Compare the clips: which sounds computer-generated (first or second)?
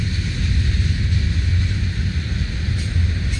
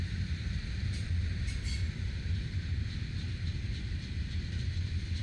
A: second